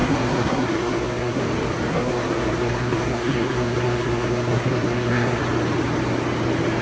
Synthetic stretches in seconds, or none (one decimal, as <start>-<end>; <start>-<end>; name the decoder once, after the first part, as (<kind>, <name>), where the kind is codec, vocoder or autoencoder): 0.0-1.4 (codec, SNAC); 1.9-5.4